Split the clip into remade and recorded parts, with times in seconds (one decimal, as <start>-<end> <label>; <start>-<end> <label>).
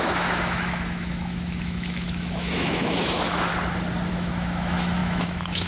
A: 0.0-3.5 remade; 3.5-4.1 recorded; 4.1-5.7 remade